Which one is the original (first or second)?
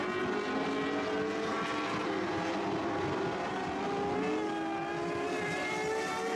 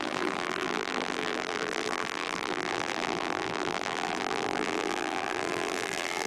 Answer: first